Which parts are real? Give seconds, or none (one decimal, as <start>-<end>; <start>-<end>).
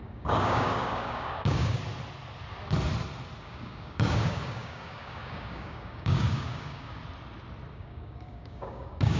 1.8-3.4; 7.0-7.7